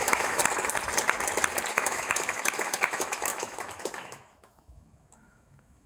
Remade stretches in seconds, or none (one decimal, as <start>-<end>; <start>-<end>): 0.0-0.4; 1.7-5.9

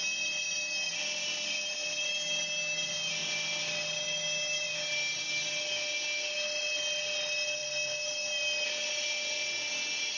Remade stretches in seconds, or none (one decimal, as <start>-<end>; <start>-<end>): none

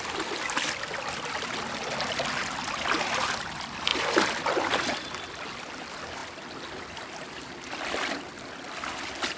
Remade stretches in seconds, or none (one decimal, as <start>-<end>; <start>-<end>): none

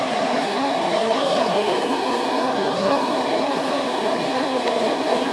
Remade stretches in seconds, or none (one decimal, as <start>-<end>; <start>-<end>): 0.0-5.3

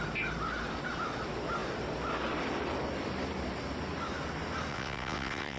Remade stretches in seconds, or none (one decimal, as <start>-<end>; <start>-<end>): 4.7-5.6

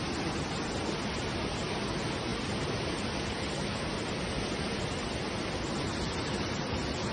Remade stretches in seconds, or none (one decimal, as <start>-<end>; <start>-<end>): none

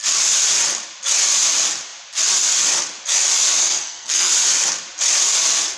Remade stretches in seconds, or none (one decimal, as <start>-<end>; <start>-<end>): 3.6-4.3